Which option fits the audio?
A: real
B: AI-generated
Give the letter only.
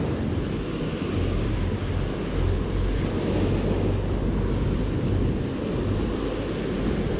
A